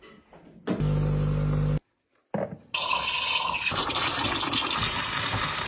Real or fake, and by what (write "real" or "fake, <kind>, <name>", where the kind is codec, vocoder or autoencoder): real